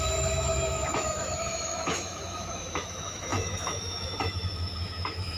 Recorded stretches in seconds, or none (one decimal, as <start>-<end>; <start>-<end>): none